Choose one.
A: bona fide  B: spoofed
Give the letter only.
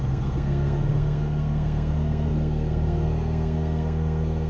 B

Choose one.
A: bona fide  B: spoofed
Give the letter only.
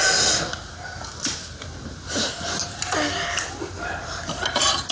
A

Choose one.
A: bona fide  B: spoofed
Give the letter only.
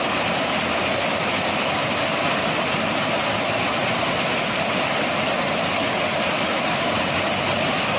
A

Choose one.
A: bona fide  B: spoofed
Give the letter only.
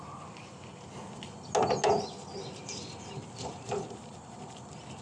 A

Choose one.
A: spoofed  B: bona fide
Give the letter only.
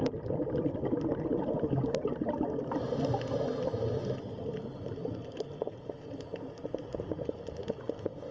B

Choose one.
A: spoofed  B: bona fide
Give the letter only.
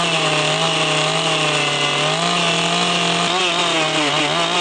B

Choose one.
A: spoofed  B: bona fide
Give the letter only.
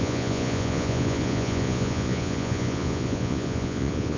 A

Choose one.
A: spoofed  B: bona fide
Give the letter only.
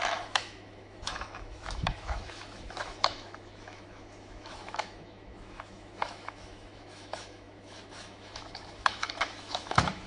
A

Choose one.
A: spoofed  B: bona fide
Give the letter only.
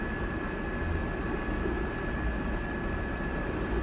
B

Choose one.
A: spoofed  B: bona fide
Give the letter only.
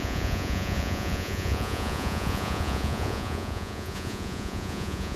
A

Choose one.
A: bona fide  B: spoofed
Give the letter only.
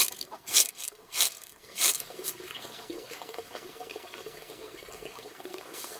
B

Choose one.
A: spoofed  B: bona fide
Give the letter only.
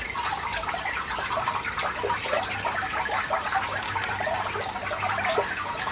B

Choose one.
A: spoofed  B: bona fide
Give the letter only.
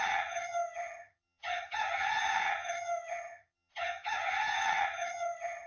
A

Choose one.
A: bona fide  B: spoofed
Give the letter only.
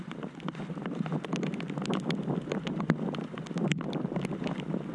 A